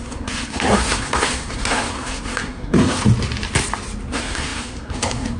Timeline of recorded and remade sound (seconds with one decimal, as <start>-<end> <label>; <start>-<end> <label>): 0.0-3.0 remade; 3.0-4.1 recorded; 4.1-5.4 remade